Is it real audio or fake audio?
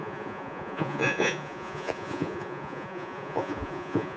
fake